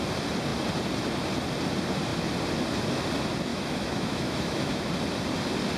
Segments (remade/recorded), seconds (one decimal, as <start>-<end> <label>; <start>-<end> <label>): 0.0-3.5 recorded; 3.5-4.9 remade; 4.9-5.8 recorded